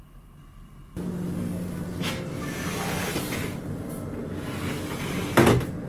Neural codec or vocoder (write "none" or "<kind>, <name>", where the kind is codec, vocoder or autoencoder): none